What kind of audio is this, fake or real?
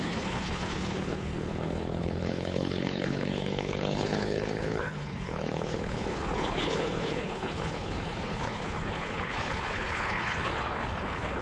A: fake